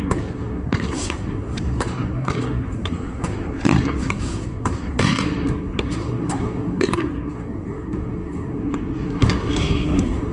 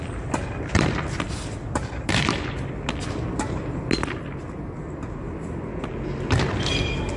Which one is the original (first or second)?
second